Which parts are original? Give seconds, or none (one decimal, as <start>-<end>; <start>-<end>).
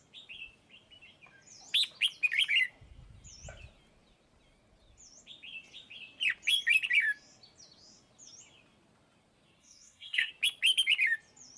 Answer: 0.0-9.6; 10.3-11.6